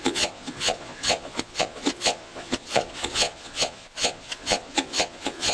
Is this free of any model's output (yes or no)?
no